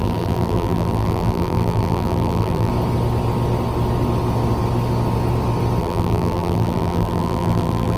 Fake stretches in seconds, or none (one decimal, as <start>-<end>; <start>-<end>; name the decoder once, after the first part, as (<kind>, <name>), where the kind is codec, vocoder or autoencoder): 0.0-2.7 (vocoder, BigVGAN v2); 5.8-8.0